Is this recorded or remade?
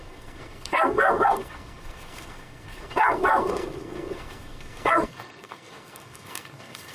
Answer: remade